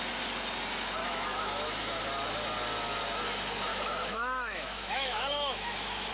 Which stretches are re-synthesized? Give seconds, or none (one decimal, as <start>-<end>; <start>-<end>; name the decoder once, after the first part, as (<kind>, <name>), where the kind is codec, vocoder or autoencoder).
1.0-2.0 (autoencoder, DAC-VAE); 3.7-6.1